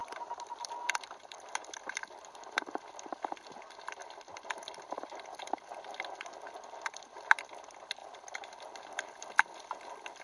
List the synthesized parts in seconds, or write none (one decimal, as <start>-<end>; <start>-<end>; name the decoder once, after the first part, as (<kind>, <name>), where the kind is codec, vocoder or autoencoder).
0.0-3.1 (vocoder, BigVGAN v2); 4.0-5.1